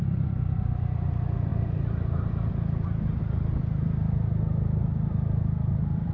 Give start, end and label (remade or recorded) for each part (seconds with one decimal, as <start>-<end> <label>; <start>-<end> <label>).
0.0-6.1 remade